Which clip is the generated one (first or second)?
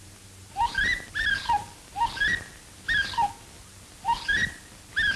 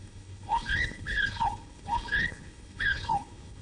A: second